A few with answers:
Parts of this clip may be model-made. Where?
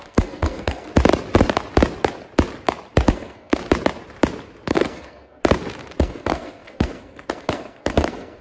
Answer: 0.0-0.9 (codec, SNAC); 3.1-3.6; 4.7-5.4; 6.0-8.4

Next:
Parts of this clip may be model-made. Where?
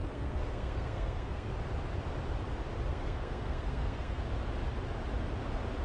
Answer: 0.0-1.5 (codec, SNAC); 2.9-4.2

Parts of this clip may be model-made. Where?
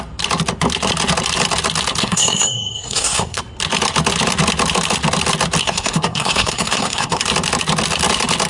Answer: 2.0-3.4 (codec, SNAC); 5.6-7.2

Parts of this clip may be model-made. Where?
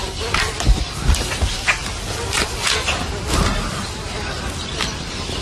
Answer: none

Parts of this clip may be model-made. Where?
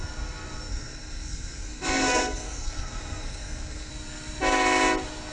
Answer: 0.7-3.9 (codec, SNAC)